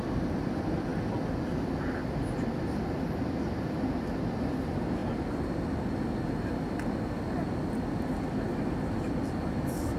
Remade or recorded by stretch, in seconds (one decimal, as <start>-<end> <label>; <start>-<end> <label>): 0.0-10.0 recorded

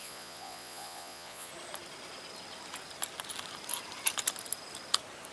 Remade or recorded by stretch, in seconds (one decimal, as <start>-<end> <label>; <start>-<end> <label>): 0.0-1.5 remade; 1.5-5.3 recorded

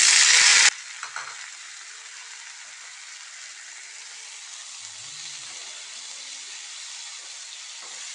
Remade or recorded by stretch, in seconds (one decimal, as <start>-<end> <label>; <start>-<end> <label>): 0.0-8.1 recorded

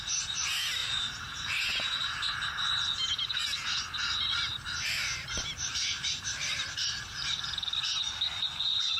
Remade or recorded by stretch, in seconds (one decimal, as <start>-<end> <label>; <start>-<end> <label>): 0.0-0.8 recorded; 0.8-1.6 remade; 1.6-4.5 recorded; 4.5-6.5 remade; 6.5-9.0 recorded

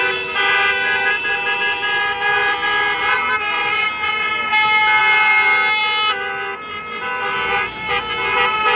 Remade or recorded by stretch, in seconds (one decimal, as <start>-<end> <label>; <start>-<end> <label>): 0.0-8.8 recorded